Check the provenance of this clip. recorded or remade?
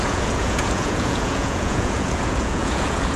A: remade